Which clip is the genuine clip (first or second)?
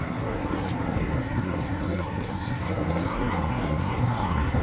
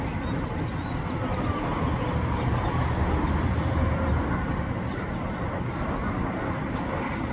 second